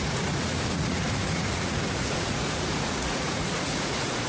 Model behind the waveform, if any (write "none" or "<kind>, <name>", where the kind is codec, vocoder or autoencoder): vocoder, Vocos